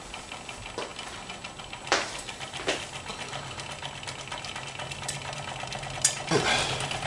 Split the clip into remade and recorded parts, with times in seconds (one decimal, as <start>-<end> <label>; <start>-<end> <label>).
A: 0.0-7.1 recorded

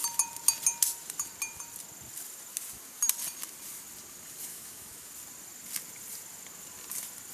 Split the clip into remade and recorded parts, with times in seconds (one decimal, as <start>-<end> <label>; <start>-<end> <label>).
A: 0.0-4.5 recorded; 4.5-5.1 remade; 5.1-7.3 recorded